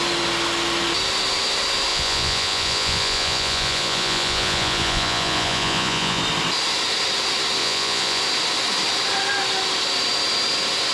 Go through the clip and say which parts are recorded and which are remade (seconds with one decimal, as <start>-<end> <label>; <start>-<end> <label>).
0.0-1.9 recorded; 1.9-6.2 remade; 6.2-7.6 recorded; 7.6-8.2 remade; 8.2-10.9 recorded